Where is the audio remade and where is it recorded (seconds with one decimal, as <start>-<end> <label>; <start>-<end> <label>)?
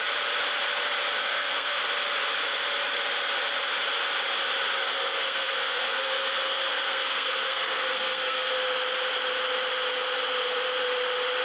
0.0-1.2 recorded; 1.2-1.8 remade; 1.8-4.8 recorded; 4.8-8.5 remade; 8.5-11.4 recorded